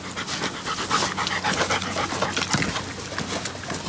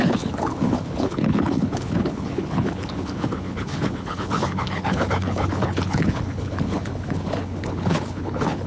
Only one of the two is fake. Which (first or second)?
second